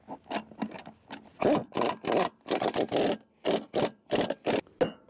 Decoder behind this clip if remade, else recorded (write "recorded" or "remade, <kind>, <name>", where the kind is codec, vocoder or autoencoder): recorded